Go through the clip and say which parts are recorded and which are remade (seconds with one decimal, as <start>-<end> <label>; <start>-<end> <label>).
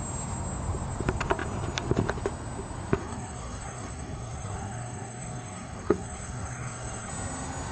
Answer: 0.0-3.0 recorded; 3.0-7.1 remade; 7.1-7.7 recorded